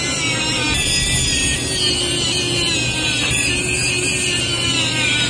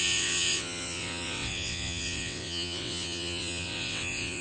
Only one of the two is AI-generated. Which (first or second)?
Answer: second